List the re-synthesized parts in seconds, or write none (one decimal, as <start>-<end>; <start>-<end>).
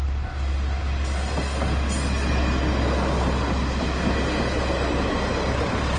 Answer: none